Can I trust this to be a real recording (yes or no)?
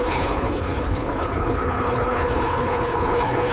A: no